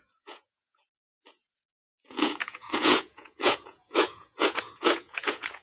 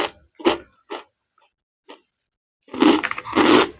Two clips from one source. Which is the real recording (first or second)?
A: second